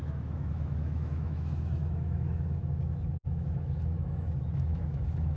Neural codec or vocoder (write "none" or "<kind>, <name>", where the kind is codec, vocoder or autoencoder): autoencoder, DAC-VAE